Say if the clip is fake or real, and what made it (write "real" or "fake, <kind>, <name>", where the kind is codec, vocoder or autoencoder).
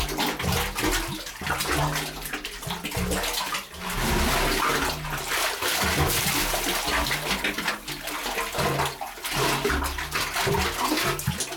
real